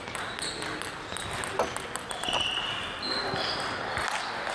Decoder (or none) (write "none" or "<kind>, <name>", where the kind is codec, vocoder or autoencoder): none